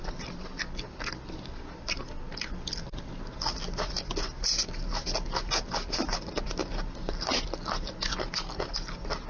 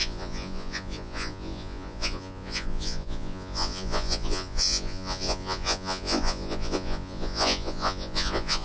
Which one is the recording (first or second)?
first